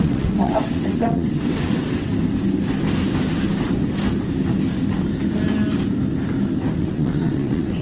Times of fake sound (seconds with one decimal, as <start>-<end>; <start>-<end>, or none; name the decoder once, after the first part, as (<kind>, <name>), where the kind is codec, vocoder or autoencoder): 0.0-2.1 (vocoder, WaveNeXt); 6.8-7.8